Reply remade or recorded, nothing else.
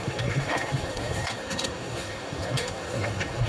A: remade